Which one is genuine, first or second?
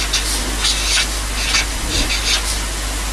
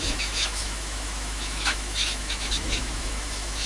first